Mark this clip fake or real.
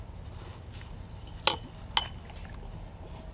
real